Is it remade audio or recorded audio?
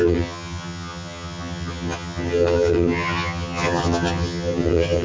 remade